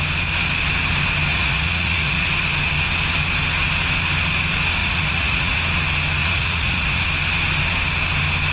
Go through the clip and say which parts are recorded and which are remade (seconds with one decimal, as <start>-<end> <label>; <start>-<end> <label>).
0.0-1.3 recorded; 1.3-2.3 remade; 2.3-4.8 recorded; 4.8-5.6 remade; 5.6-6.2 recorded; 6.2-7.0 remade; 7.0-8.5 recorded